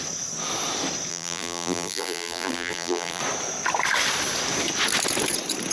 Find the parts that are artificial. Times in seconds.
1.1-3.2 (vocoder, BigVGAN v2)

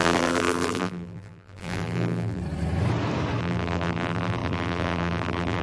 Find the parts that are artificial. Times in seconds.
0.0-2.4 (vocoder, BigVGAN v2); 3.4-5.6

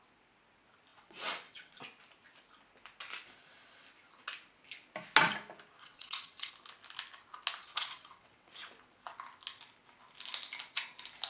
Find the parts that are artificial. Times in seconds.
0.9-1.8 (vocoder, WaveNeXt); 5.8-6.5; 7.6-8.5

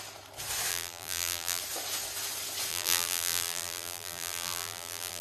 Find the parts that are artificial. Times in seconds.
0.7-1.6 (vocoder, BigVGAN v2); 2.7-5.2